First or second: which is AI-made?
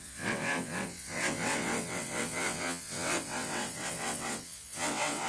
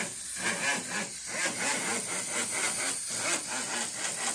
first